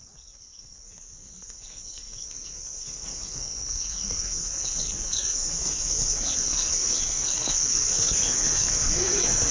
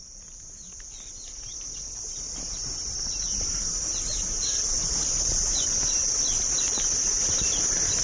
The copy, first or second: first